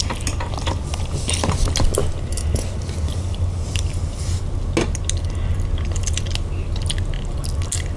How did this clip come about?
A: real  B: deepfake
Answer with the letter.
A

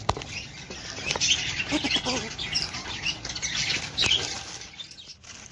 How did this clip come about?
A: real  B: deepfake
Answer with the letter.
A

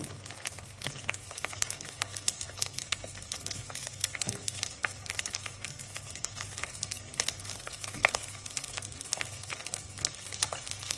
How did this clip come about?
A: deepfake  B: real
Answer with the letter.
A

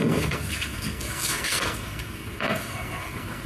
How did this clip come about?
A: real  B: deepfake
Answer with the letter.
B